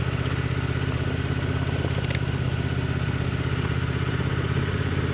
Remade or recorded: recorded